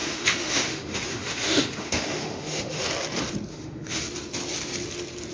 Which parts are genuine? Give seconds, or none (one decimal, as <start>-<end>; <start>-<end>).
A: 2.9-3.5; 4.0-5.3